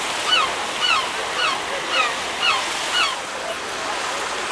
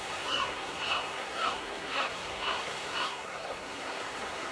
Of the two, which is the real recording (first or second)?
first